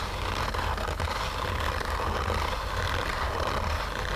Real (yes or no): yes